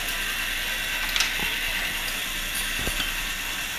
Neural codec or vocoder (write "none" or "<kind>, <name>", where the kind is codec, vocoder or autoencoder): none